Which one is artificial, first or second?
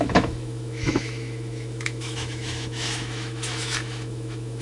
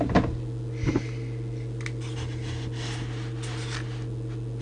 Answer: first